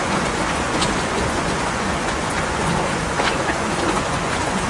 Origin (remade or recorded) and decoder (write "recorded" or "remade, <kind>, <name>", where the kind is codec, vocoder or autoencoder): remade, vocoder, Vocos